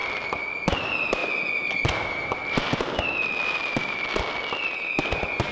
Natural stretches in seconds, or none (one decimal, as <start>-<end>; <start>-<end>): 0.0-5.5